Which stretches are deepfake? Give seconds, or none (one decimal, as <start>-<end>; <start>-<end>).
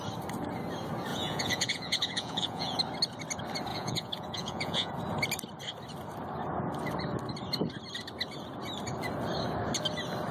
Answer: 1.1-2.8; 3.7-4.9